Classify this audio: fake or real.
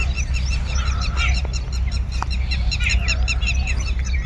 real